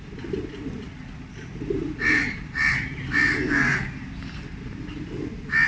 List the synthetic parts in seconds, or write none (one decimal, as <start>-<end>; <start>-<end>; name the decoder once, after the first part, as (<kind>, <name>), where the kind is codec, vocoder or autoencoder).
none